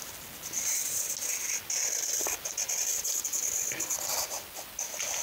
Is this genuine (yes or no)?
yes